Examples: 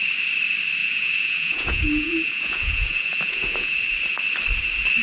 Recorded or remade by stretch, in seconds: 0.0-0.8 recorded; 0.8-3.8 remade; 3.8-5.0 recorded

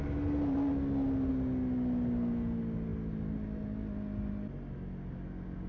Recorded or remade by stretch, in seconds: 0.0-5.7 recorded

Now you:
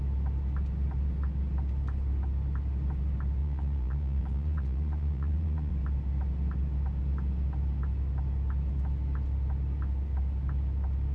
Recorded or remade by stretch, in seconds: 0.0-3.4 recorded; 3.4-5.7 remade; 5.7-11.1 recorded

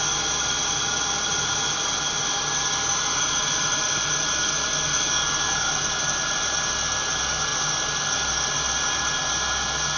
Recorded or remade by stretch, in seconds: 0.0-10.0 recorded